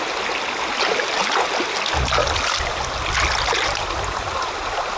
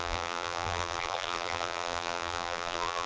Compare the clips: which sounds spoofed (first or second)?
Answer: second